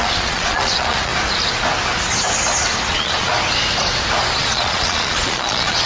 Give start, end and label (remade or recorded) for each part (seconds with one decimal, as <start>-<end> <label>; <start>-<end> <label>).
0.0-1.1 remade; 1.1-2.9 recorded; 2.9-3.3 remade; 3.3-4.4 recorded; 4.4-5.9 remade